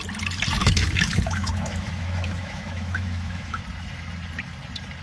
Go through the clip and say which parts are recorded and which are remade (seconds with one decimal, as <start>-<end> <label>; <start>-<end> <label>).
0.0-0.6 recorded; 0.6-3.6 remade; 3.6-5.0 recorded